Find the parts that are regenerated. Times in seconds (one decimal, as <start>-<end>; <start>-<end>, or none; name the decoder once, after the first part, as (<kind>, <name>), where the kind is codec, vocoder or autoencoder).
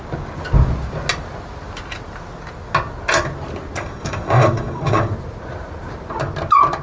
3.8-5.1 (codec, DAC)